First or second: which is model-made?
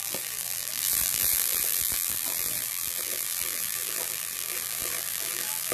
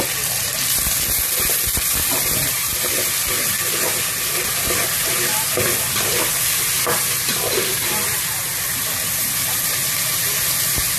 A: first